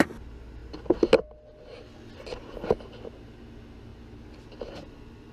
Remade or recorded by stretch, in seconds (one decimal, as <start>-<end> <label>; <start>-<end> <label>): 0.0-5.3 recorded